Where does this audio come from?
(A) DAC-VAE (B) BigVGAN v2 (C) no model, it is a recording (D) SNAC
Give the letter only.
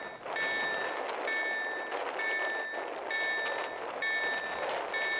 C